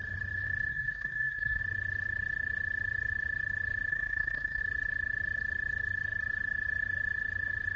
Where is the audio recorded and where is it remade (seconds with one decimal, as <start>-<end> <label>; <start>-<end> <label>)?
0.0-0.7 recorded; 0.7-1.6 remade; 1.6-3.9 recorded; 3.9-4.6 remade; 4.6-7.8 recorded